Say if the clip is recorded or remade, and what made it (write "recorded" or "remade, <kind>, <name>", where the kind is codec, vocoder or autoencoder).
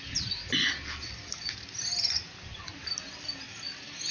recorded